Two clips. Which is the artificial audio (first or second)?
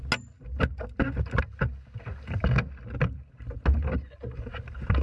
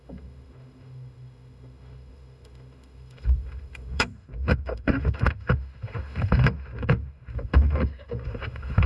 second